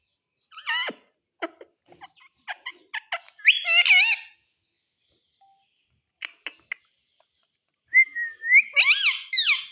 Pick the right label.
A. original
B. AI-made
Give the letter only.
A